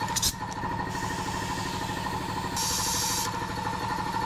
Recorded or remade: recorded